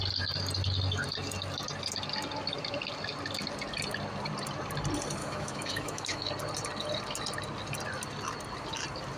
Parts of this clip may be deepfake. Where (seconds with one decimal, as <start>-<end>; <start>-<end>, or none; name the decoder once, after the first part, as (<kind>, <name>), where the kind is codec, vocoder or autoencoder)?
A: 5.2-6.3 (autoencoder, DAC-VAE)

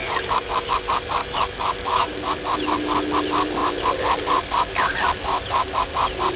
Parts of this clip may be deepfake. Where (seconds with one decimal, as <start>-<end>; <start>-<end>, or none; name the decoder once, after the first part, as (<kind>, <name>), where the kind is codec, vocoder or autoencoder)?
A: 0.0-0.7 (autoencoder, DAC-VAE); 1.2-2.1

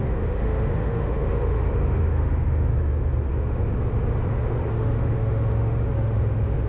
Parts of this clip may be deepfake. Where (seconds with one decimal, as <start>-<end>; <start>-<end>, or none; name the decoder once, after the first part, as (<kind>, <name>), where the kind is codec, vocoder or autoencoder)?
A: 0.0-2.7 (autoencoder, DAC-VAE); 3.3-3.7; 4.7-6.7

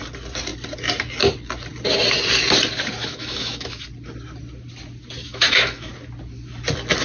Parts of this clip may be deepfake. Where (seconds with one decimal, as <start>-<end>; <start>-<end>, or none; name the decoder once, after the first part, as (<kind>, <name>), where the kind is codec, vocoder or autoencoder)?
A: 3.0-3.8 (autoencoder, DAC-VAE); 5.2-5.9

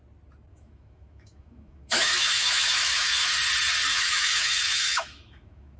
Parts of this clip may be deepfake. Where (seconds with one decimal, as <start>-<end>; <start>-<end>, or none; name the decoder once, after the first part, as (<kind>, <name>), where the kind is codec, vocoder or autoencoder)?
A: 0.5-3.3 (autoencoder, DAC-VAE); 3.9-5.8